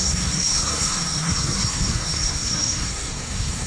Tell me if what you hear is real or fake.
fake